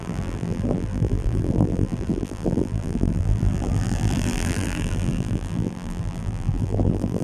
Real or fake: fake